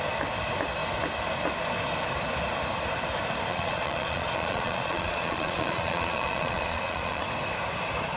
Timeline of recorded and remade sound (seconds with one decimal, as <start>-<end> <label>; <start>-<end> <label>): 0.0-3.5 recorded; 3.5-7.2 remade; 7.2-8.2 recorded